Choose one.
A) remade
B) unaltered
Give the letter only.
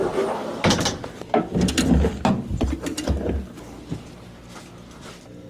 B